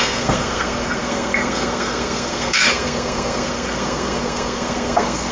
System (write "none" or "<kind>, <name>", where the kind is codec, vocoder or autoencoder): codec, SNAC